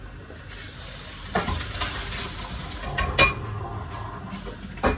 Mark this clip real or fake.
real